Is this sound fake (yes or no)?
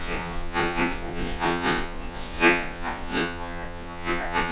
yes